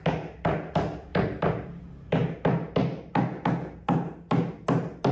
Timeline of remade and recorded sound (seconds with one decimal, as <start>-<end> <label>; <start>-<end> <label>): 0.0-1.1 recorded; 1.1-1.8 remade; 1.8-5.1 recorded